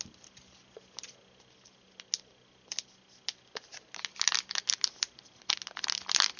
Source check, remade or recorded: recorded